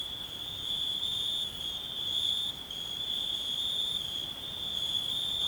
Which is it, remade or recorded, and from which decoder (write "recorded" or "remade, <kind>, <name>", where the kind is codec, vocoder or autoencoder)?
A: remade, vocoder, BigVGAN v2